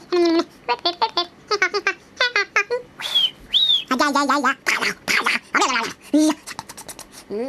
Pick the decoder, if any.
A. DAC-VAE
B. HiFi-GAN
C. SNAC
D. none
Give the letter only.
D